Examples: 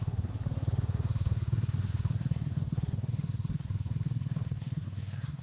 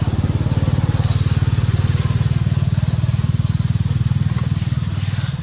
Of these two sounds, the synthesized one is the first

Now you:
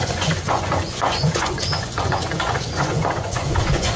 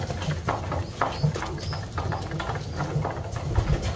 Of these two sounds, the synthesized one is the first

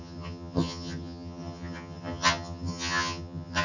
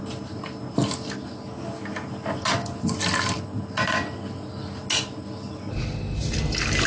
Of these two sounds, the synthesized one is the first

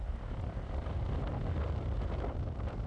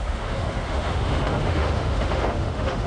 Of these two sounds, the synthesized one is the second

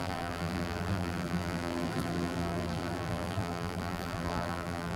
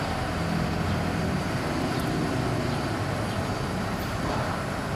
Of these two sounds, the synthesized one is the first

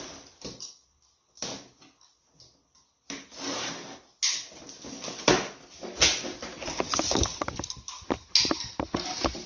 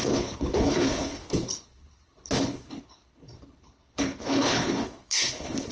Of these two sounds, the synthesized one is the second